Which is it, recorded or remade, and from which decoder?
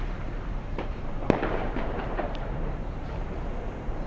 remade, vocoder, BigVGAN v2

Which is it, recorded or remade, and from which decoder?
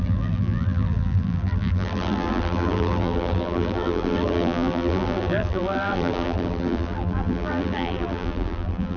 remade, vocoder, BigVGAN v2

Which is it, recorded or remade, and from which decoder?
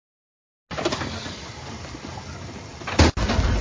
recorded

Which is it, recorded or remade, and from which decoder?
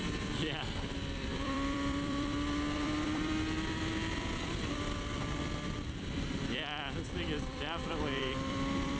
remade, vocoder, BigVGAN v2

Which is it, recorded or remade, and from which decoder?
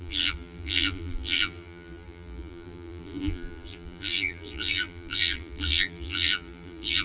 remade, vocoder, BigVGAN v2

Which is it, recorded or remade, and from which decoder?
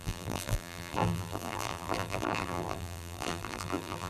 remade, vocoder, BigVGAN v2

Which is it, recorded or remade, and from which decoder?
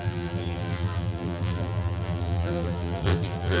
remade, vocoder, BigVGAN v2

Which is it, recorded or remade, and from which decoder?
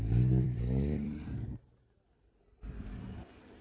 remade, vocoder, BigVGAN v2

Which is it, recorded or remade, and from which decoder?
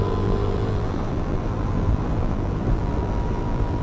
remade, vocoder, BigVGAN v2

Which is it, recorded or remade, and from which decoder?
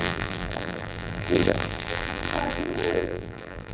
remade, vocoder, BigVGAN v2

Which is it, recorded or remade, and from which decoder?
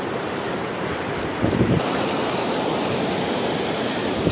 remade, vocoder, BigVGAN v2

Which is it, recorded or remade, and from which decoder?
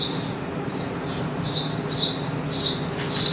recorded